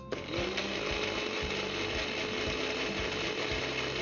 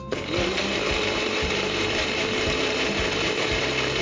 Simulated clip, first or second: second